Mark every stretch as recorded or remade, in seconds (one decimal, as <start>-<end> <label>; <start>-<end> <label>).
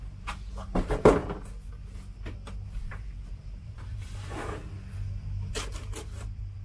0.0-1.2 remade; 1.2-3.3 recorded; 3.3-4.6 remade; 4.6-5.5 recorded; 5.5-6.6 remade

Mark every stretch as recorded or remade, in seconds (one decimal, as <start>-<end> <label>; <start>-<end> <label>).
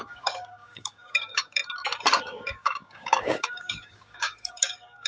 0.0-1.6 remade; 1.6-2.2 recorded; 2.2-5.1 remade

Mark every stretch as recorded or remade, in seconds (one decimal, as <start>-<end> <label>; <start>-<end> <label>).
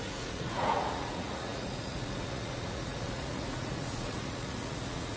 0.0-5.2 remade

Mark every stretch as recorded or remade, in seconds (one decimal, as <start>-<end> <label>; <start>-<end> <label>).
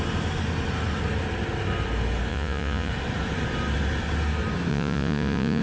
0.0-2.3 recorded; 2.3-2.9 remade; 2.9-4.7 recorded; 4.7-5.6 remade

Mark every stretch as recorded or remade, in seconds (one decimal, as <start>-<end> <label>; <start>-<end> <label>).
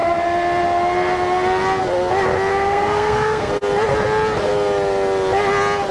0.0-2.5 recorded; 2.5-3.5 remade; 3.5-5.9 recorded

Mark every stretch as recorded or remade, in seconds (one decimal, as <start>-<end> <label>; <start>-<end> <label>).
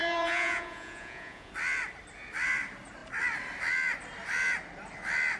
0.0-1.5 remade; 1.5-5.4 recorded